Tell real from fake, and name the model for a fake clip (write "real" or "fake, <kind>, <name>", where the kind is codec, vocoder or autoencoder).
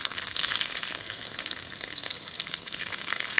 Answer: fake, codec, SNAC